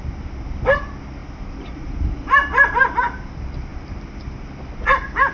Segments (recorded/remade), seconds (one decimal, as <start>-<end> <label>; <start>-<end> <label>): 0.0-1.2 recorded; 1.2-3.3 remade; 3.3-5.3 recorded